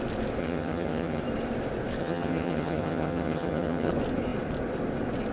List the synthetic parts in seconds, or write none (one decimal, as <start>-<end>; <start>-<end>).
0.4-1.2; 2.0-3.9